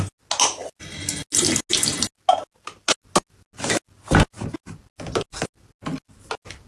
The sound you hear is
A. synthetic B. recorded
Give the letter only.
B